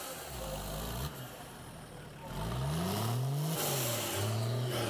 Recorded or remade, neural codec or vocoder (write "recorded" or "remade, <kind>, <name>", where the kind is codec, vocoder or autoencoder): recorded